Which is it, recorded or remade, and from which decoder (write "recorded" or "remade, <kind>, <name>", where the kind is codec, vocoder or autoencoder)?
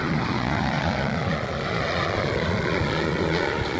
remade, vocoder, Vocos